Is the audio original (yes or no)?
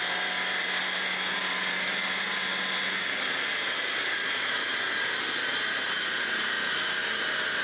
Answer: yes